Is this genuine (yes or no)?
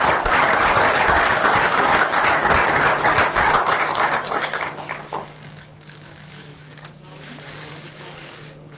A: no